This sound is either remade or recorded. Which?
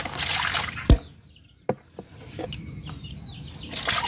recorded